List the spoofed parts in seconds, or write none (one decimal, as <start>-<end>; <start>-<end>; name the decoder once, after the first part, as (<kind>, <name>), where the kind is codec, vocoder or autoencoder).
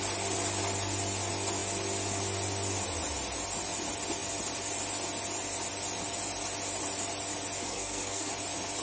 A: 7.6-8.3 (codec, SNAC)